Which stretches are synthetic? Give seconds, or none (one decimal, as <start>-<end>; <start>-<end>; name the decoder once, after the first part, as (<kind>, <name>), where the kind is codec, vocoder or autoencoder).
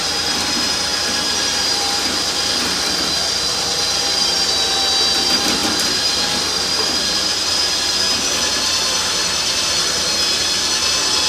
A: 0.9-4.8 (vocoder, BigVGAN v2); 5.6-7.7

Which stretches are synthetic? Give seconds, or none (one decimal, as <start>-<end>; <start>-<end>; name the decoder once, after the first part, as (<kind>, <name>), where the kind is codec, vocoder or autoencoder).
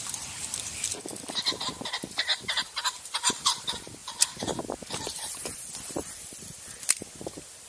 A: 0.0-7.7 (vocoder, BigVGAN v2)